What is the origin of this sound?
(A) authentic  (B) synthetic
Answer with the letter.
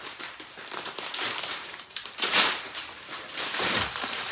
B